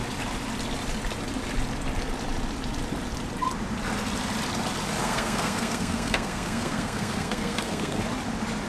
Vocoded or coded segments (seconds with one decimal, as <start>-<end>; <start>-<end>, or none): 5.0-8.0